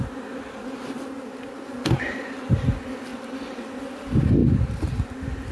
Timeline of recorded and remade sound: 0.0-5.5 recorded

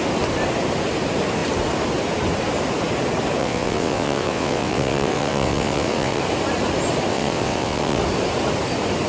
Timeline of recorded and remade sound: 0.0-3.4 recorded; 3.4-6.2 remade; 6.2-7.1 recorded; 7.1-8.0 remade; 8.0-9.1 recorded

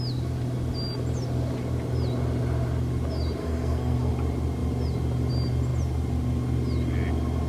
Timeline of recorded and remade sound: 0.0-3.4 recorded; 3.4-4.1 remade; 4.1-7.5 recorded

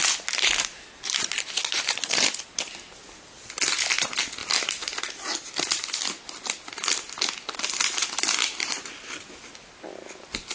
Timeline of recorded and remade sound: 0.0-10.5 recorded

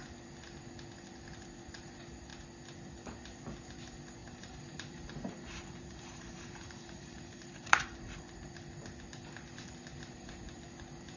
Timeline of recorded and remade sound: 0.0-4.2 recorded; 4.2-8.7 remade; 8.7-11.2 recorded

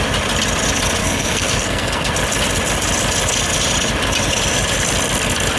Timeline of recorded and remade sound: 0.0-1.0 recorded; 1.0-2.1 remade; 2.1-5.6 recorded

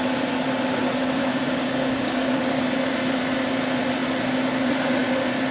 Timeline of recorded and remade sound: 0.0-1.2 recorded; 1.2-2.4 remade; 2.4-5.5 recorded